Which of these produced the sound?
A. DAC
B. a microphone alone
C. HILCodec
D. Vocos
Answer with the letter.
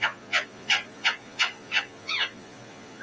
D